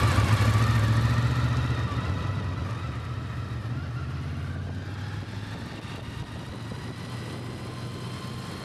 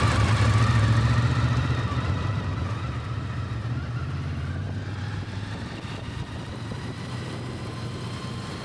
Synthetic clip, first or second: second